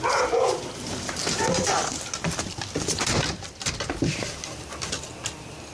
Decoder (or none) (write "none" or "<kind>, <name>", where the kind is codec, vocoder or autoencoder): none